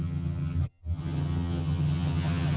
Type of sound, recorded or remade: remade